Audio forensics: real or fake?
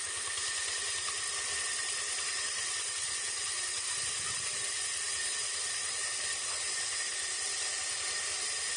real